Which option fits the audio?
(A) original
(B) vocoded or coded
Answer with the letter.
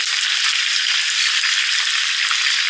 A